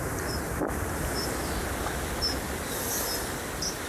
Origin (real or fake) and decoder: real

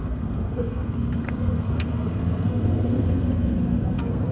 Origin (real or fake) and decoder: fake, codec, SNAC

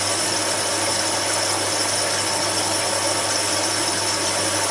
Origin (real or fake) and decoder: real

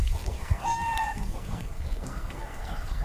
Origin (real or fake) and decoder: fake, codec, SNAC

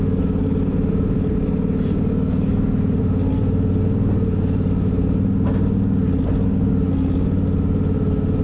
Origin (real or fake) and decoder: real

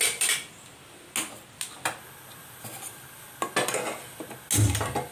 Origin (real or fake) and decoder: real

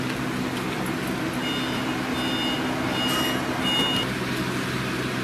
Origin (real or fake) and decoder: real